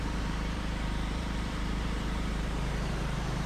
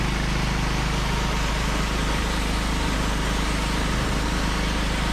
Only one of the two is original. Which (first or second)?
second